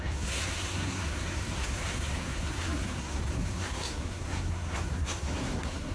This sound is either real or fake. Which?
fake